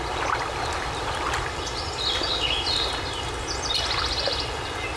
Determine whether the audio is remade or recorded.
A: recorded